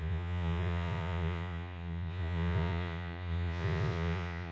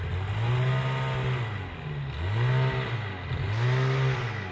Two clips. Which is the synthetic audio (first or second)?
first